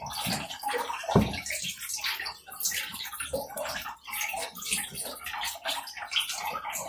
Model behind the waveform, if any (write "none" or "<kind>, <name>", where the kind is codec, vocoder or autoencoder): none